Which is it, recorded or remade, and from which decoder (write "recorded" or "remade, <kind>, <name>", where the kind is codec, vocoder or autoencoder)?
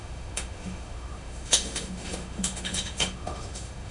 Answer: remade, autoencoder, DAC-VAE